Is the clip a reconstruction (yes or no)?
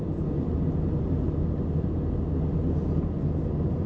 no